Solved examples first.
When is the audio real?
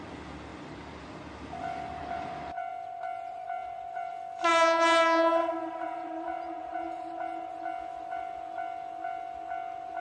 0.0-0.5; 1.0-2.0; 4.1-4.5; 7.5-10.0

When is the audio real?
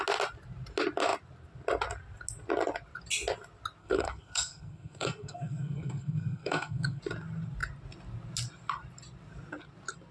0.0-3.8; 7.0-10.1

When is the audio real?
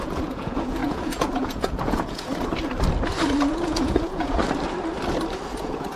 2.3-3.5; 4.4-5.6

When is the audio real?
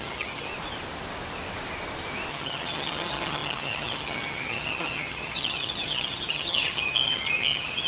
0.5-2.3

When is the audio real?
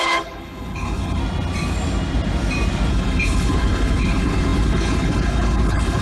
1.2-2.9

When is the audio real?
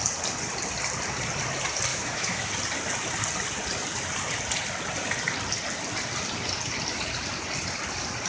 0.0-1.9; 2.5-8.3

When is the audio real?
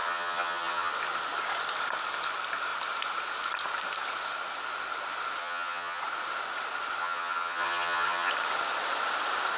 0.9-5.4; 6.0-7.0; 8.3-9.6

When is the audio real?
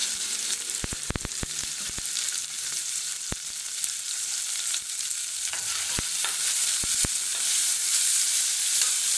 none